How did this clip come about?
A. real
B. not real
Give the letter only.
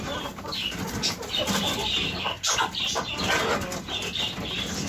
A